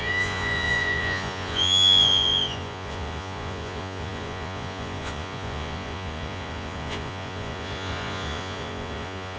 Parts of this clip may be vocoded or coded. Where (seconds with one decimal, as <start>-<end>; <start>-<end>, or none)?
0.0-9.4